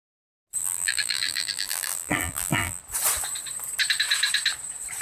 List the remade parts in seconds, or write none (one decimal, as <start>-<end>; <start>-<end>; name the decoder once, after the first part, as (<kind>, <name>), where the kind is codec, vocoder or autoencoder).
0.6-2.8 (vocoder, BigVGAN v2)